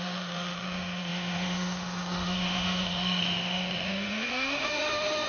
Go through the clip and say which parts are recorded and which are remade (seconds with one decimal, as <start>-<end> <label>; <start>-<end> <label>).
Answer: 0.0-5.3 remade